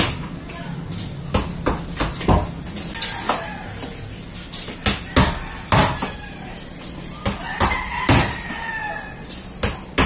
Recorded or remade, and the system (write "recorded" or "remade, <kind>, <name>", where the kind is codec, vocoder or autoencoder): recorded